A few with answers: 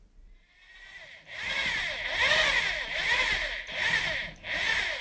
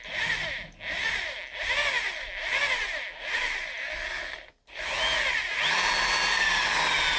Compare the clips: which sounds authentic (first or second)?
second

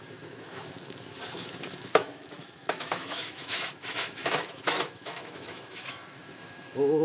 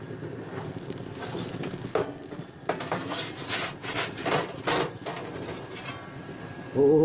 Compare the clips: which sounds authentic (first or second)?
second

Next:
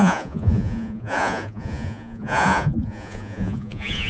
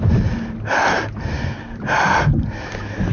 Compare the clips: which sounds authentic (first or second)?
second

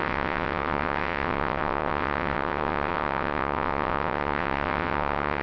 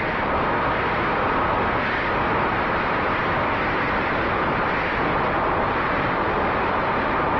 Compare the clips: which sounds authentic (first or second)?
second